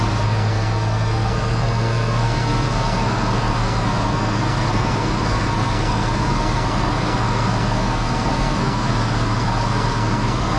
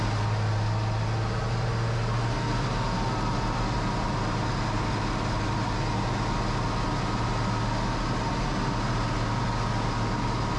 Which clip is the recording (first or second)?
second